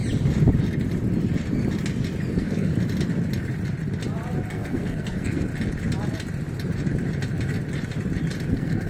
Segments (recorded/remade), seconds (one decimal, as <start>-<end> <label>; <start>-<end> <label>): 0.0-2.3 recorded; 2.3-2.7 remade; 2.7-4.5 recorded; 4.5-5.5 remade; 5.5-8.5 recorded; 8.5-8.9 remade